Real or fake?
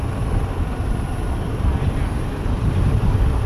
real